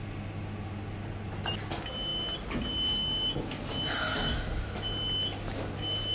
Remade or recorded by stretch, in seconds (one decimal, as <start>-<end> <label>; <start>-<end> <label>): 0.0-6.1 recorded